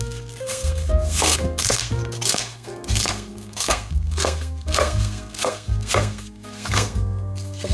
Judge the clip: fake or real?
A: fake